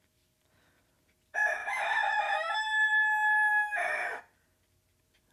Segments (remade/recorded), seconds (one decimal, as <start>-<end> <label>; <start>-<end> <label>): 0.0-1.6 recorded; 1.6-4.2 remade; 4.2-5.3 recorded